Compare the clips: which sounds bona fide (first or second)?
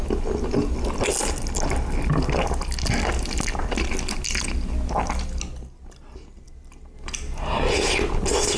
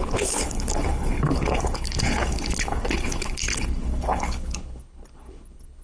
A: first